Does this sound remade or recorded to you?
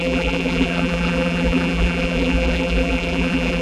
remade